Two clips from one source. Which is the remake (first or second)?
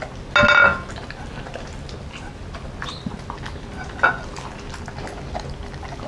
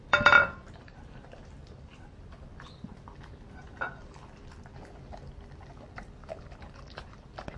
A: second